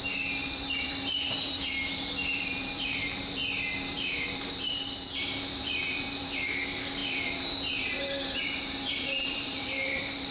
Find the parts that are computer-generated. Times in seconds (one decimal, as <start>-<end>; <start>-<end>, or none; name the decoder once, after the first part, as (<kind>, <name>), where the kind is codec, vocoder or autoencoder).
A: 0.0-3.4 (vocoder, BigVGAN v2); 3.9-10.3